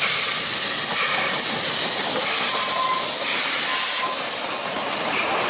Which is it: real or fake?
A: real